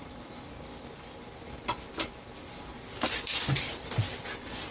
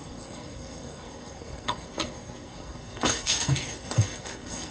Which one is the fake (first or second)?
second